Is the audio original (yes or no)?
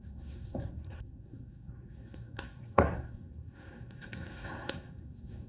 no